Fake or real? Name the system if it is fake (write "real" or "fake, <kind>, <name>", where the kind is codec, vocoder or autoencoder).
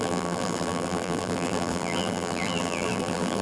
fake, vocoder, BigVGAN v2